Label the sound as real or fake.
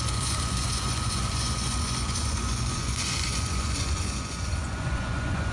fake